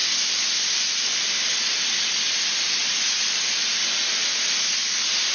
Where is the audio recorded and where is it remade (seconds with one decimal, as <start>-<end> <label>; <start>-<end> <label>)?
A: 0.0-5.3 recorded